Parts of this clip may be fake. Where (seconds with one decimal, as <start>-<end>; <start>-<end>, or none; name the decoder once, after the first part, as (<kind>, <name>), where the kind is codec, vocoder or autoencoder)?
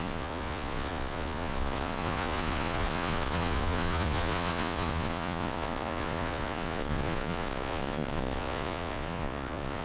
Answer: 0.0-9.8 (vocoder, Vocos)